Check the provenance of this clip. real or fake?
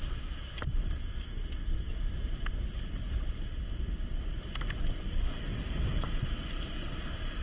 real